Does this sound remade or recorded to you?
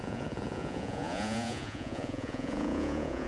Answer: remade